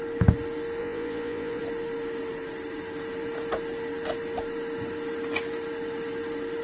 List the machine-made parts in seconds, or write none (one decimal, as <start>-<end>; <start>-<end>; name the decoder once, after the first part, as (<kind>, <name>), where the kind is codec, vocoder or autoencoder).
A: 0.8-1.6 (vocoder, Vocos)